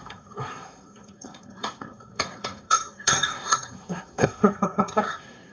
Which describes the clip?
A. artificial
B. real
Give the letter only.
A